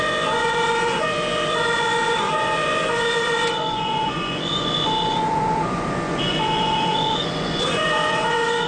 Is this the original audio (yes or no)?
no